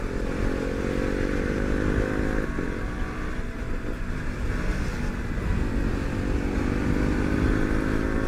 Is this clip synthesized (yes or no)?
no